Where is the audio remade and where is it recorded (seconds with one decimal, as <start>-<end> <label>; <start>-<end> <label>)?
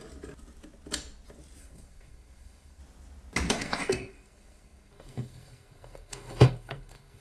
0.0-1.6 recorded; 1.6-2.8 remade; 2.8-3.5 recorded; 3.5-7.2 remade